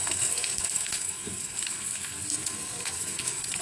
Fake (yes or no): yes